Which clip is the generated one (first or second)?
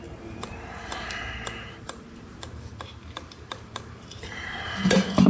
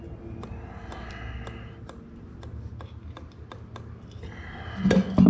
first